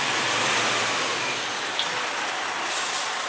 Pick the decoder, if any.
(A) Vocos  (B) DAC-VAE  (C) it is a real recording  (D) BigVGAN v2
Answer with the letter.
C